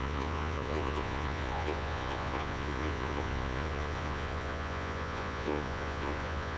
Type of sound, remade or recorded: remade